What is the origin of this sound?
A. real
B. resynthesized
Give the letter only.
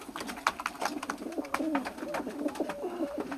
A